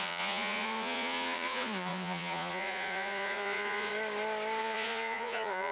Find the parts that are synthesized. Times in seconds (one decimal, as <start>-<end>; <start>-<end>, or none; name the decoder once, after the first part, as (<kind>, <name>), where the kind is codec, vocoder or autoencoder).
0.0-3.9 (vocoder, Vocos); 4.6-5.7